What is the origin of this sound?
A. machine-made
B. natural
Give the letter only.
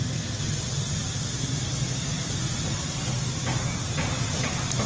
B